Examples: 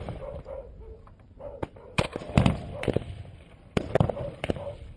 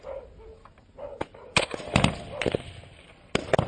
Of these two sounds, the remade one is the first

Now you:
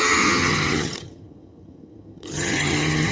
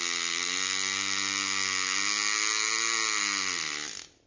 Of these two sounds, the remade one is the first